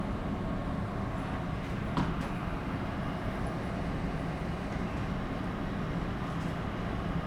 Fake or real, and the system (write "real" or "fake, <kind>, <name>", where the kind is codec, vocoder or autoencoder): real